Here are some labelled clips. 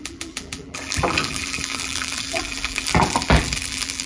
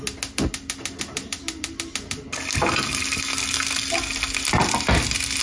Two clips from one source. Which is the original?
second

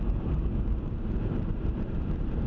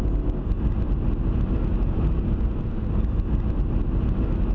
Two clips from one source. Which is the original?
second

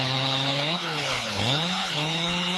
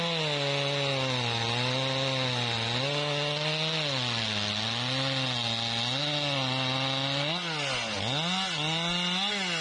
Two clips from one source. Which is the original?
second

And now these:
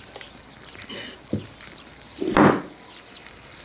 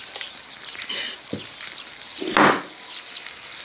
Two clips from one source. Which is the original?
second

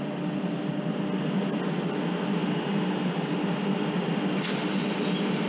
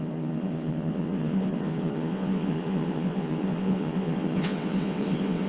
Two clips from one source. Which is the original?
first